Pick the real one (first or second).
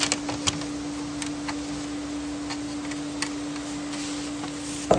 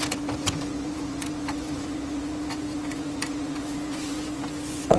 first